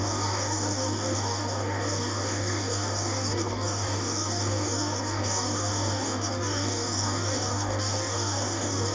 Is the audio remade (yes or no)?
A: yes